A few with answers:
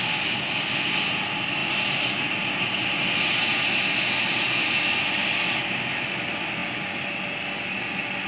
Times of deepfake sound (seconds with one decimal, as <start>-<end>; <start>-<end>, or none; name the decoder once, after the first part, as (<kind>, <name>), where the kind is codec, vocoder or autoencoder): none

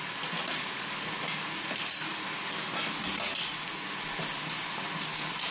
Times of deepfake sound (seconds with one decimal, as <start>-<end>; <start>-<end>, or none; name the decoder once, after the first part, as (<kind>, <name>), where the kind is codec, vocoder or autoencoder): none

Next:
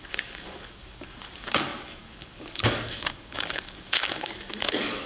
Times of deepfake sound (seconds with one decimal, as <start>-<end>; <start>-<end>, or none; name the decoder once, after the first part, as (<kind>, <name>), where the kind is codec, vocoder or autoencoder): 0.0-5.1 (codec, DAC)

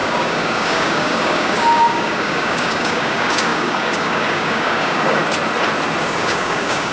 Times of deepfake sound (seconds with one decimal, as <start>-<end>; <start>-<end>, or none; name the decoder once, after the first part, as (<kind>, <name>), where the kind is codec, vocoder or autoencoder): 0.0-5.2 (codec, DAC); 6.0-6.9

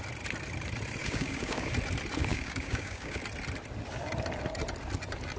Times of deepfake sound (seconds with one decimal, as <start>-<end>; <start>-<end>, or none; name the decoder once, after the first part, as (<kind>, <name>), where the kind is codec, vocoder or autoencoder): 1.0-1.7 (codec, DAC); 2.2-3.2